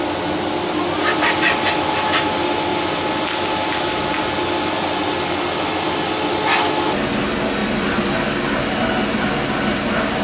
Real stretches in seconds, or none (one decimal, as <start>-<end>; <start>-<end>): 0.0-2.7; 3.9-7.6; 8.2-10.2

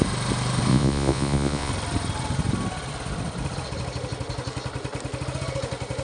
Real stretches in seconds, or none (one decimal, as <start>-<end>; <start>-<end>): 0.0-0.7; 1.7-6.0

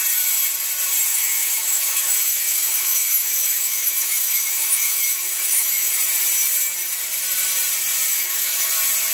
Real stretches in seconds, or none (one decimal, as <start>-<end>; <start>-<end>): 0.0-1.1; 5.9-8.1; 8.7-9.1

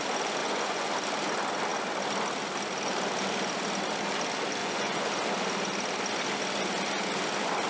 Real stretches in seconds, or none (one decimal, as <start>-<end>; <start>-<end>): 0.0-0.4; 0.9-4.6; 5.1-7.7

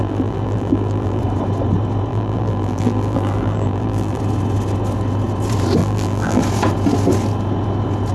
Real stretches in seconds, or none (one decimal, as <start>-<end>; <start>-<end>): 1.2-2.1; 4.2-5.8; 6.4-8.1

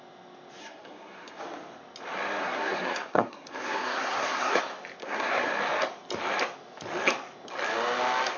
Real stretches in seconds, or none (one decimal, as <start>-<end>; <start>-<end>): 0.0-0.6; 1.4-2.4; 4.6-5.0; 5.5-8.4

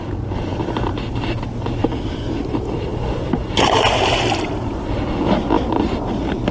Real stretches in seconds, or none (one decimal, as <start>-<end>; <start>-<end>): 0.0-6.5

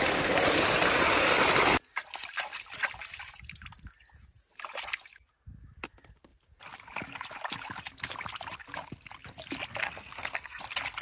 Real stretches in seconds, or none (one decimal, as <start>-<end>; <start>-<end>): 0.0-9.8; 10.6-11.0